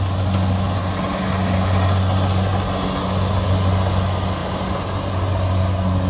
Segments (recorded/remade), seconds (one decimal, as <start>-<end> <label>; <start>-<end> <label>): 0.0-6.1 recorded